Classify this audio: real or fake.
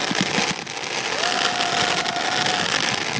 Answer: real